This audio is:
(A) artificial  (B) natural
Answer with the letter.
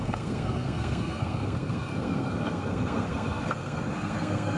A